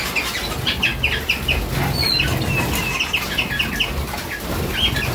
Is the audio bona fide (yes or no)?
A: yes